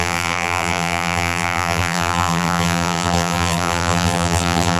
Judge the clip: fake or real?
fake